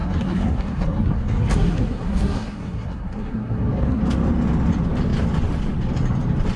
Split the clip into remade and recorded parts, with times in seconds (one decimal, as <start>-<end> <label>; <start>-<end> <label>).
0.0-4.0 remade; 4.0-6.6 recorded